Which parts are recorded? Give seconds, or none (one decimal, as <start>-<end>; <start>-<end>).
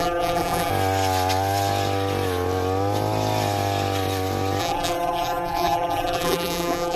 0.7-4.6